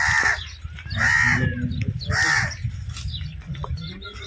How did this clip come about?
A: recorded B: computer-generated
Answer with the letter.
A